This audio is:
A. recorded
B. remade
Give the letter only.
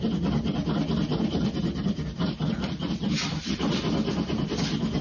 A